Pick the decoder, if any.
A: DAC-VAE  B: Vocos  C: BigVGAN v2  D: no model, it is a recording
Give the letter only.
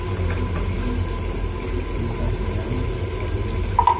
D